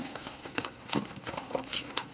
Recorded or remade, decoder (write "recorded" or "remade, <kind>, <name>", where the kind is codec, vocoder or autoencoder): remade, codec, SNAC